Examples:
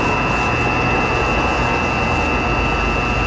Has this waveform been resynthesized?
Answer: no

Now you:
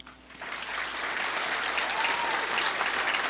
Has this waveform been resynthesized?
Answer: no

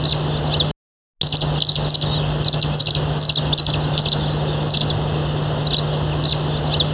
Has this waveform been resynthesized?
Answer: no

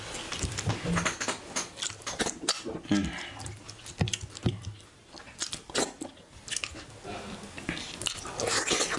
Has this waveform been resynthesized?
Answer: no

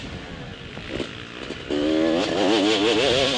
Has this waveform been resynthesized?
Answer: no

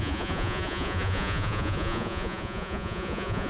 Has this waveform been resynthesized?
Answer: yes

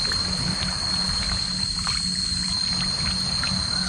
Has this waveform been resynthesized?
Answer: no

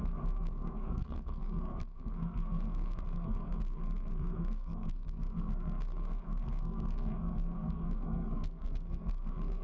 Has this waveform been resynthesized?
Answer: yes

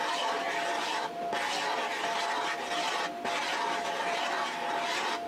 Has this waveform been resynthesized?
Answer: no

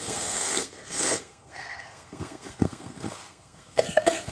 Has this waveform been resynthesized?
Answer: yes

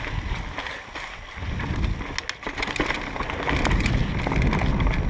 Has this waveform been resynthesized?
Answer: no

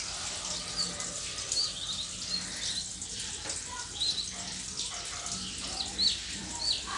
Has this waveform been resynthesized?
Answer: no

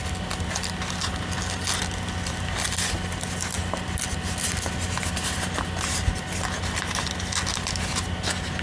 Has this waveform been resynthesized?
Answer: no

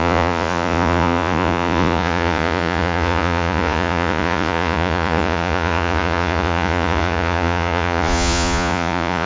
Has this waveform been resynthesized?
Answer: yes